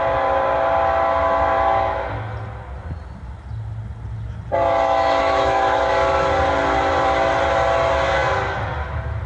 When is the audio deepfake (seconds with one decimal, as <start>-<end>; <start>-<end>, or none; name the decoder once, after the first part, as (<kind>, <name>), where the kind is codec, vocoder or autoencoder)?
5.2-5.8 (autoencoder, DAC-VAE)